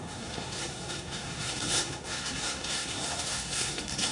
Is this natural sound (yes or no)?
no